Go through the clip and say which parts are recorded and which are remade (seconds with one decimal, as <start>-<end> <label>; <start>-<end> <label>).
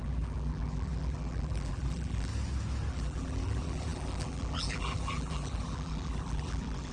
0.0-2.3 remade; 2.3-2.9 recorded; 2.9-6.9 remade